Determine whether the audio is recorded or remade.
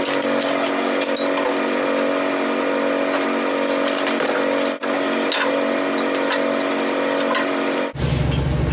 recorded